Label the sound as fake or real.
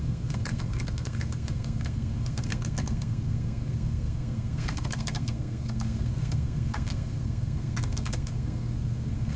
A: fake